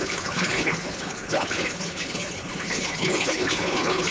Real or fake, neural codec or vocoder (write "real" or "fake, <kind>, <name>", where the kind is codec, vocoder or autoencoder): fake, codec, HILCodec